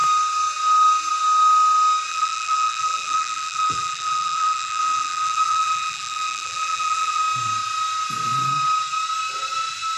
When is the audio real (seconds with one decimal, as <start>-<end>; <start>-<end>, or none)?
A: 0.0-2.1; 7.2-10.0